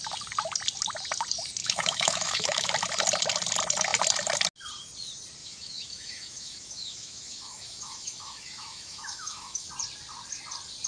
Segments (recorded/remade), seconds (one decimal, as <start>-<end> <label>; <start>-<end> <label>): 0.0-1.6 recorded; 1.6-2.7 remade; 2.7-5.4 recorded; 5.4-9.7 remade; 9.7-10.9 recorded